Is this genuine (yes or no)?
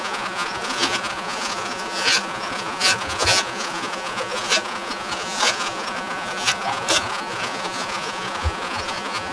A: no